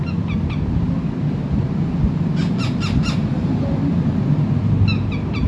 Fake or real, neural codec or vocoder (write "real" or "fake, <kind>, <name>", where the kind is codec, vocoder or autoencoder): real